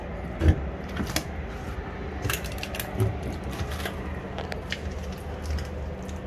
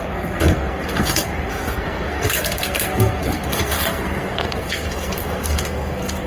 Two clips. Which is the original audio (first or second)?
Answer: first